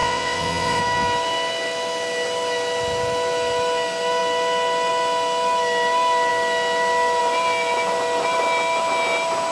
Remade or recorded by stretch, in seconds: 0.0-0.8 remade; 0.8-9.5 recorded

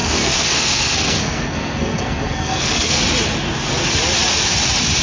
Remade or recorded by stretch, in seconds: 0.0-3.0 remade; 3.0-5.0 recorded

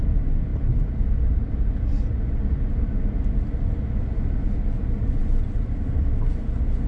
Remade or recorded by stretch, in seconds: 0.0-5.2 recorded; 5.2-6.1 remade; 6.1-6.9 recorded

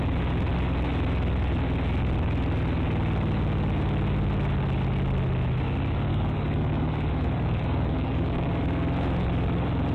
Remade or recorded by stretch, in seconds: 0.0-6.1 recorded; 6.1-8.5 remade; 8.5-9.9 recorded